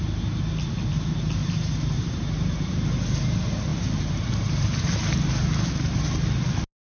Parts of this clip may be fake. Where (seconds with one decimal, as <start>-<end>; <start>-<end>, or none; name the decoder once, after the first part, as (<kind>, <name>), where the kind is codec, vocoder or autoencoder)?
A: 1.4-2.7 (vocoder, BigVGAN v2); 3.7-5.7